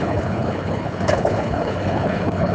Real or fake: fake